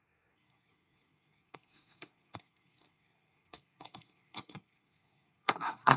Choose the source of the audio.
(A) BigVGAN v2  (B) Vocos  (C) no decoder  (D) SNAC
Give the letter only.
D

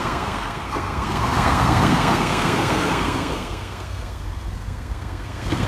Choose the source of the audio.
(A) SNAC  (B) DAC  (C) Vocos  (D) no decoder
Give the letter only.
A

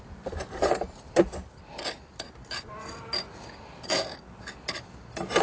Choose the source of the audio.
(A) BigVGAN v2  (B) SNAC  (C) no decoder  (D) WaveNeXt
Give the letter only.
C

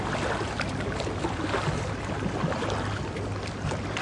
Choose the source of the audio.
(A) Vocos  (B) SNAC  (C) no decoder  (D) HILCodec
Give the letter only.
C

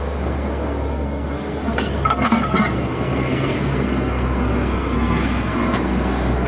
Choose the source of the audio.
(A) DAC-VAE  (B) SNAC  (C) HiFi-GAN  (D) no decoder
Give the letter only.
B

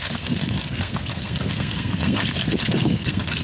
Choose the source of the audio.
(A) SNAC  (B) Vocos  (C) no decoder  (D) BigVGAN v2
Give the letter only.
A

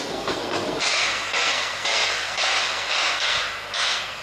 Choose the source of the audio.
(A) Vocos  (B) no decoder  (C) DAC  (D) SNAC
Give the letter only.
D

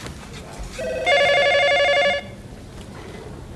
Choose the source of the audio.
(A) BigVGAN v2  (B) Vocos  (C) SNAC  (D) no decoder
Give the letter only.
D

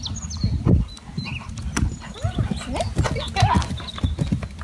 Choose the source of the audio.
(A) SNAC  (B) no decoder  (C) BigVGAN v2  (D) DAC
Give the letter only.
B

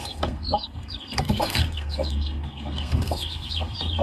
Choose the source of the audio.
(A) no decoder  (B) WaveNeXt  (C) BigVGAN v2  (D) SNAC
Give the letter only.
D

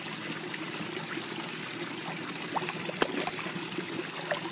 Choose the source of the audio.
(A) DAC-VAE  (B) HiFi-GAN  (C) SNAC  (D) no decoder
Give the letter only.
D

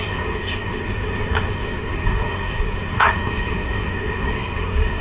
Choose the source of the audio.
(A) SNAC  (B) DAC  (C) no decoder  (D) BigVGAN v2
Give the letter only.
A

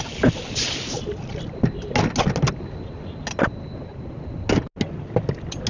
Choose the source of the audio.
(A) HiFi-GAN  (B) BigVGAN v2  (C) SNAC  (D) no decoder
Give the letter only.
D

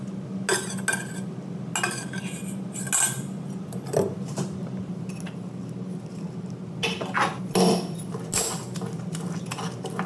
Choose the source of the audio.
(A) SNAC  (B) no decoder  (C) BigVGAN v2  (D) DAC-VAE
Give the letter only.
B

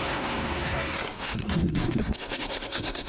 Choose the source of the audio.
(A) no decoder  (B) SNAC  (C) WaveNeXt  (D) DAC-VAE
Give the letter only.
B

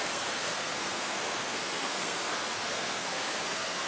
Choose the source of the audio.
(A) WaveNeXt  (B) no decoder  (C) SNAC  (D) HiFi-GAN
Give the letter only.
C